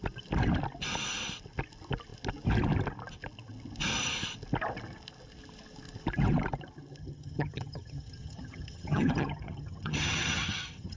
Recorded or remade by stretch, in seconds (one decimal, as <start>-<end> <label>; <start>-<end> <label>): 0.0-7.0 recorded; 7.0-11.0 remade